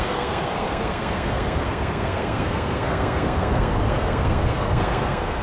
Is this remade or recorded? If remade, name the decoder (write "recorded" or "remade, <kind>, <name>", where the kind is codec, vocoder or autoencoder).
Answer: remade, codec, SNAC